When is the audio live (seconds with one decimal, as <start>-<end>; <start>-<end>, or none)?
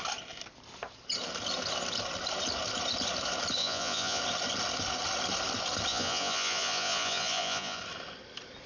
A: 0.0-3.6; 4.2-5.9; 7.8-8.7